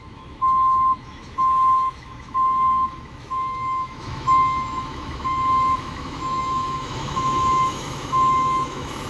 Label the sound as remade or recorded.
remade